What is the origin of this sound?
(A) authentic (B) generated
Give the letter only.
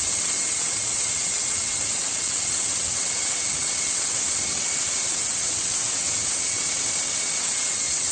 B